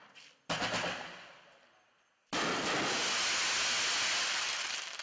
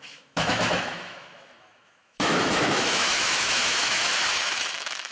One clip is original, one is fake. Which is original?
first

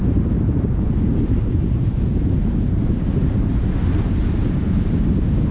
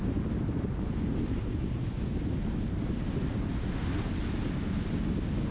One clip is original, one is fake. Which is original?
second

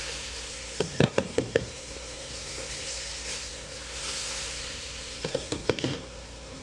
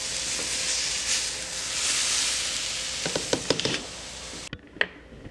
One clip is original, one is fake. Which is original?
second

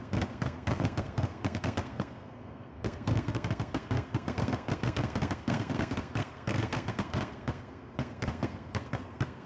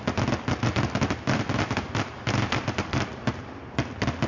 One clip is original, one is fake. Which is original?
second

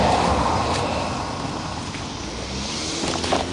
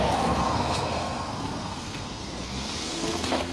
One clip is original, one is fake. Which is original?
first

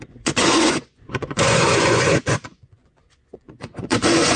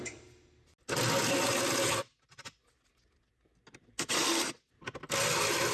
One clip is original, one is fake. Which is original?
second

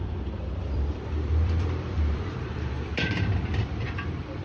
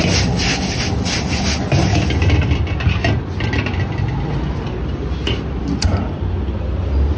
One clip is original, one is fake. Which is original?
second